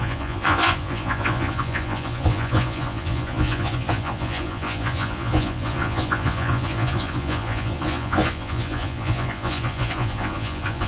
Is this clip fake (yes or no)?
yes